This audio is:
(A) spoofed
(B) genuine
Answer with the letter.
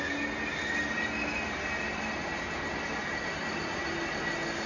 B